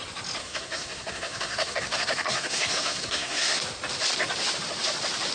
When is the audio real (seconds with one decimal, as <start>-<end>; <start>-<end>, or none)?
0.0-0.4; 3.6-5.3